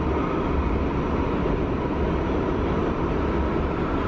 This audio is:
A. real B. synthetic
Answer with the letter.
A